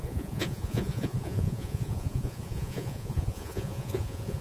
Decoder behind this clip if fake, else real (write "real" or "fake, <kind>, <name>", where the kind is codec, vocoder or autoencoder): fake, vocoder, Vocos